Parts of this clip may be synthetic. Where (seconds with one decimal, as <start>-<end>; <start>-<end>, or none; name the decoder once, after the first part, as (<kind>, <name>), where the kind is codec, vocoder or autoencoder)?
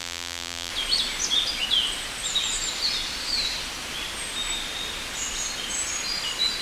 0.0-0.7 (vocoder, BigVGAN v2)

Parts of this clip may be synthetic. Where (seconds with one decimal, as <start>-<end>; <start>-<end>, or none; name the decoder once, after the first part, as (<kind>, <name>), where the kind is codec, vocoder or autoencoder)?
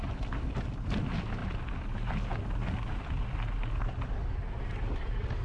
none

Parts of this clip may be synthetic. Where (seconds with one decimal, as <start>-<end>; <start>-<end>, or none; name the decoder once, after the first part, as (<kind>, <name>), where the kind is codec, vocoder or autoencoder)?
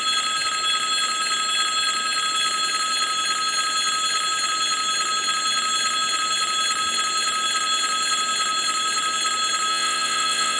9.7-10.6 (vocoder, WaveNeXt)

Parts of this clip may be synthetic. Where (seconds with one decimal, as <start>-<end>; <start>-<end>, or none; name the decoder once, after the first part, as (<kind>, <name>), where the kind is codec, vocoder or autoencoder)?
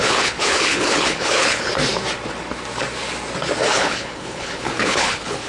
0.0-1.7 (codec, HILCodec); 3.7-5.5